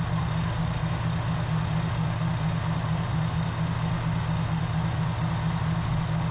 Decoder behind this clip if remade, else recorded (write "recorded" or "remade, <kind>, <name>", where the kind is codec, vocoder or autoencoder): recorded